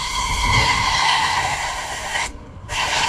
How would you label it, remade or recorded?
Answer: remade